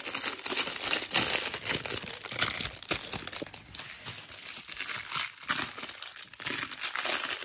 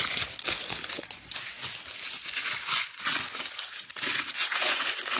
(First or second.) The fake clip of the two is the second